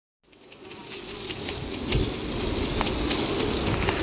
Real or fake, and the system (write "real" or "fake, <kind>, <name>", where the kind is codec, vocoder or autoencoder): real